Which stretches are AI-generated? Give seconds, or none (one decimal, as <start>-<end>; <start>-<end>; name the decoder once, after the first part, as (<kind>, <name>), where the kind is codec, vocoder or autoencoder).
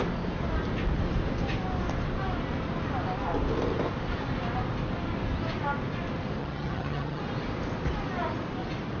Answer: 6.4-7.2 (vocoder, HiFi-GAN)